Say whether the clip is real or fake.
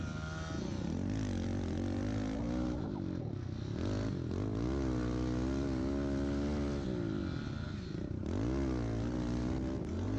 real